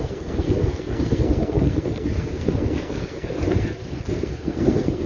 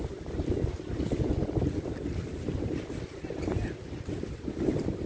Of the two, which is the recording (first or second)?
second